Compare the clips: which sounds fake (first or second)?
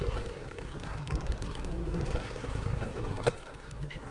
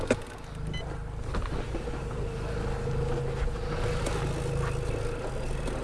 first